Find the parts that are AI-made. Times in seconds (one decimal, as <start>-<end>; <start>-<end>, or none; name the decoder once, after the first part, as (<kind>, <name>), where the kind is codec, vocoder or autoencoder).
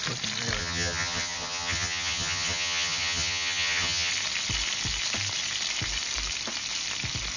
0.6-4.1 (vocoder, HiFi-GAN)